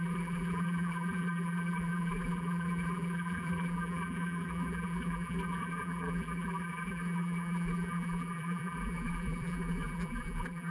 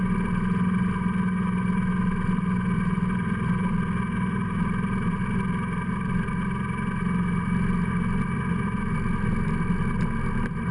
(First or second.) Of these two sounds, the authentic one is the second